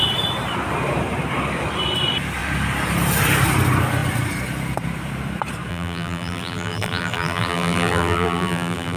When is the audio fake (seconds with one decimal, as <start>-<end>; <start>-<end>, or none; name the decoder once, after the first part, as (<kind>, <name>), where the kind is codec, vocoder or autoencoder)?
5.7-9.0 (vocoder, BigVGAN v2)